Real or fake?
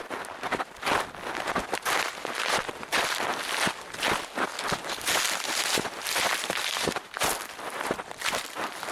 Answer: real